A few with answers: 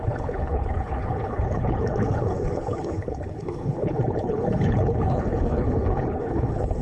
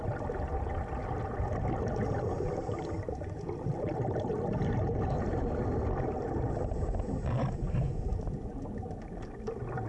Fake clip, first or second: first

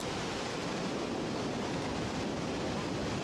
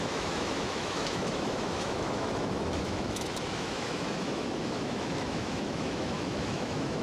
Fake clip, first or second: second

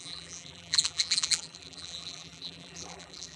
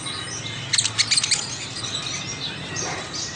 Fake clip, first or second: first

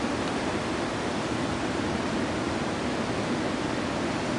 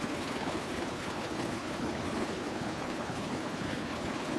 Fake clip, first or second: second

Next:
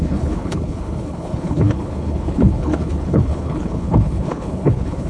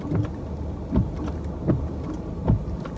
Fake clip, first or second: first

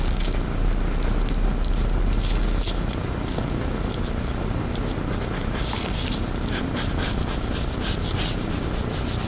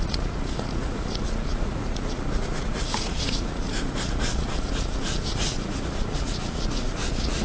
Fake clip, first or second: second